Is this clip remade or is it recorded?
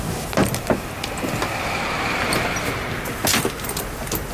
recorded